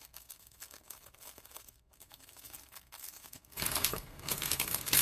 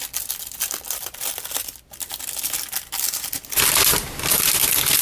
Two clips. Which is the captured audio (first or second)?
second